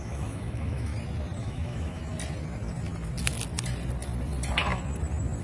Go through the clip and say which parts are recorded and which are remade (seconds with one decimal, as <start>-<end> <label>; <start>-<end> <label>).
0.0-0.9 remade; 0.9-1.4 recorded; 1.4-2.0 remade; 2.0-5.4 recorded